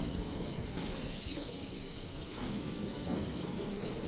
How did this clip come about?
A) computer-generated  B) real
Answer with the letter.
A